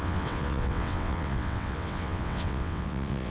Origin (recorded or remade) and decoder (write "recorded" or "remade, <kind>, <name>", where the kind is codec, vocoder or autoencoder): remade, vocoder, WaveNeXt